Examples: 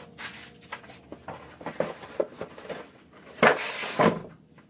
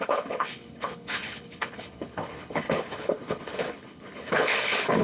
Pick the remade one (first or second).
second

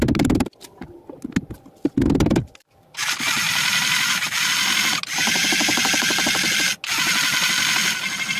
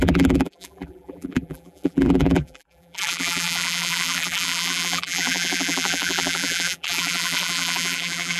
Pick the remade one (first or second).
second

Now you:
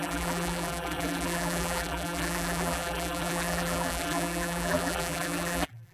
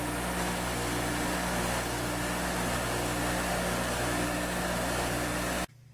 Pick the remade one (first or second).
first